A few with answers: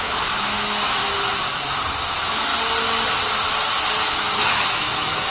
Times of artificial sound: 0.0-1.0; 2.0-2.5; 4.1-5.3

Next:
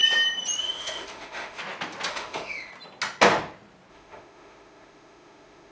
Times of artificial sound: 0.6-1.6; 2.1-2.7; 3.9-5.7

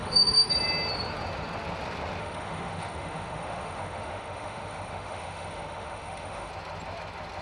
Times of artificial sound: 0.0-0.5; 2.2-6.5

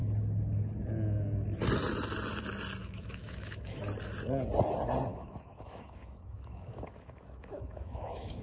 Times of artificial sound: 2.8-3.8; 5.1-8.4